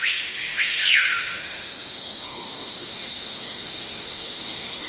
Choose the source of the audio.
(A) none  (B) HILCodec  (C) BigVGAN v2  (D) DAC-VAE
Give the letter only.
D